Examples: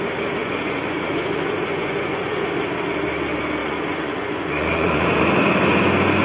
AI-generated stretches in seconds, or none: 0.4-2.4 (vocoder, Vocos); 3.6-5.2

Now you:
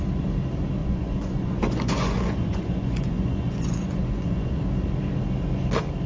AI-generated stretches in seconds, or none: 0.8-4.5 (vocoder, Vocos)

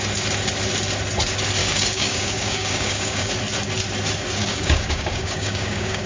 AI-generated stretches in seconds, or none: 1.6-3.3 (codec, DAC); 4.4-6.1

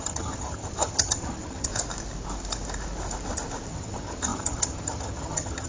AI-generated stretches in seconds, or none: 0.0-1.7 (vocoder, HiFi-GAN); 3.7-5.7

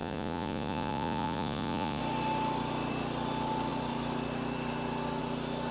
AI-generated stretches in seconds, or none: 0.0-2.0 (vocoder, Vocos)